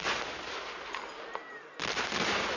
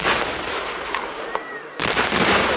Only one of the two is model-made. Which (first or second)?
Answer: second